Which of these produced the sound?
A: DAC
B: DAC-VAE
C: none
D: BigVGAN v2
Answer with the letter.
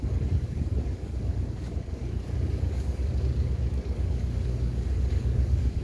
A